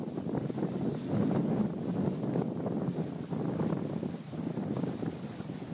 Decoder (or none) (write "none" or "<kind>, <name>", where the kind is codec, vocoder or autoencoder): none